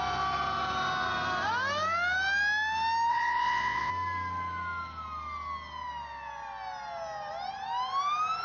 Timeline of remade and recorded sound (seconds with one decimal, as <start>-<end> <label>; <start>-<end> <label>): 0.0-3.1 recorded; 3.1-3.9 remade; 3.9-8.4 recorded